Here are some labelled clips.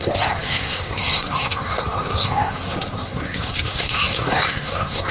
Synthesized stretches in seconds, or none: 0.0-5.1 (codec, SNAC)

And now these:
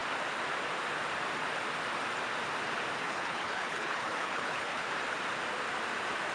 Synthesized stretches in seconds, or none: 3.0-4.9 (codec, HILCodec)

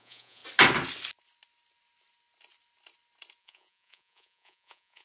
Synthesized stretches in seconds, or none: 0.0-0.4 (vocoder, Vocos); 3.4-5.0

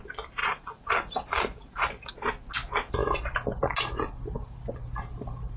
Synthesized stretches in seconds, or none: 0.4-2.1 (vocoder, BigVGAN v2)

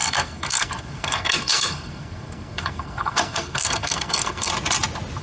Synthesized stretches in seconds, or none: 0.0-4.5 (codec, SNAC)

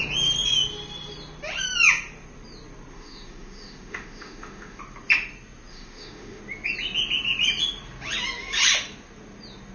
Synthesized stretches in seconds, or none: 2.9-4.8 (autoencoder, DAC-VAE); 5.7-6.4

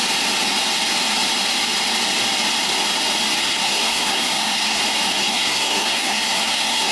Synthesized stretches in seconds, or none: 3.4-4.8 (codec, SNAC); 5.2-6.9